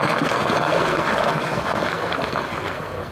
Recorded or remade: remade